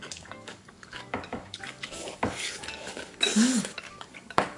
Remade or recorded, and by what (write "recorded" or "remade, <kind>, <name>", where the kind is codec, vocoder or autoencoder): remade, codec, DAC